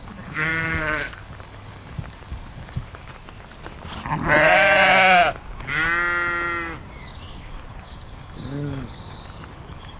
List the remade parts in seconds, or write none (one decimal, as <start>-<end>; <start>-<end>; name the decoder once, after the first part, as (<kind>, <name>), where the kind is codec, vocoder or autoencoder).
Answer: 0.0-3.1 (codec, DAC); 7.0-10.0